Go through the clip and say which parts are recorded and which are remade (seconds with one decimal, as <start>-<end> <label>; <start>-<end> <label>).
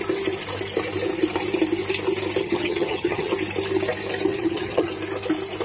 0.0-2.4 recorded; 2.4-3.3 remade; 3.3-4.3 recorded; 4.3-4.9 remade; 4.9-5.6 recorded